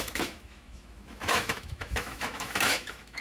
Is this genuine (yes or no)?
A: no